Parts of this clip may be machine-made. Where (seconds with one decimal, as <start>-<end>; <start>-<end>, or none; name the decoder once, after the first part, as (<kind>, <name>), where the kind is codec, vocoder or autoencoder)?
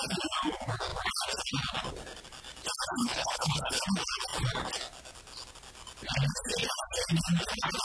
3.0-3.8 (codec, HILCodec)